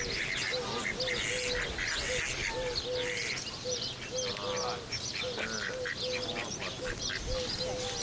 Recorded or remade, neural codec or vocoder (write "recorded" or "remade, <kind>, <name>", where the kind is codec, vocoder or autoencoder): recorded